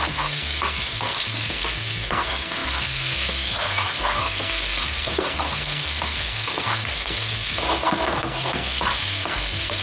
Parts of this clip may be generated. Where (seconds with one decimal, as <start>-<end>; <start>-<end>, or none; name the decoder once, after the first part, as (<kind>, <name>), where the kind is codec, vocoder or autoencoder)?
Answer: 0.0-9.8 (codec, SNAC)